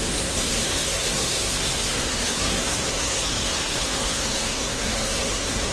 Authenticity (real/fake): fake